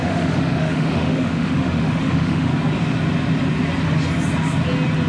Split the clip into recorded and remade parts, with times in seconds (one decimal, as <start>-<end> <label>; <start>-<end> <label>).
0.0-2.5 remade; 2.5-5.1 recorded